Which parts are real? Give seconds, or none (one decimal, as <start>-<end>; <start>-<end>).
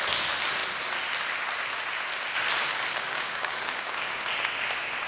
0.0-2.9; 4.2-5.1